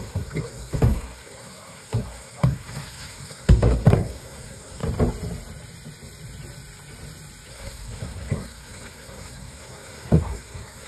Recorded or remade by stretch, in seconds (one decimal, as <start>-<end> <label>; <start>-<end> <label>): 0.0-4.8 remade; 4.8-7.5 recorded; 7.5-10.9 remade

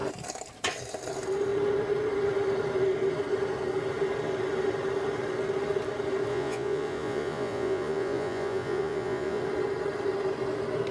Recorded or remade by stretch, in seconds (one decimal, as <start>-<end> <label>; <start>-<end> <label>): 0.0-6.3 recorded; 6.3-9.4 remade; 9.4-10.9 recorded

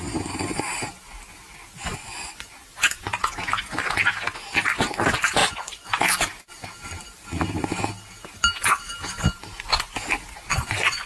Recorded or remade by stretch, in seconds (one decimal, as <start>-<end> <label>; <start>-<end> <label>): 0.0-1.9 recorded; 1.9-2.6 remade; 2.6-5.4 recorded; 5.4-5.9 remade; 5.9-10.5 recorded; 10.5-11.1 remade

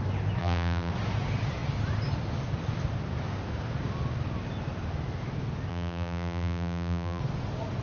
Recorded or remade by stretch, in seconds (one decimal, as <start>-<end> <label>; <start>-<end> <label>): 0.0-0.4 recorded; 0.4-0.9 remade; 0.9-5.7 recorded; 5.7-7.2 remade; 7.2-7.8 recorded

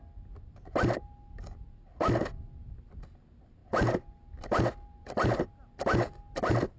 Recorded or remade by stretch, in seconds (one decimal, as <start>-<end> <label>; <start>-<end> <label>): 0.0-6.8 recorded

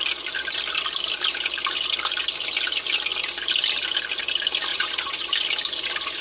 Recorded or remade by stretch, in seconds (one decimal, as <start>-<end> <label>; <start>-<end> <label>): 0.0-4.7 recorded; 4.7-5.3 remade; 5.3-6.2 recorded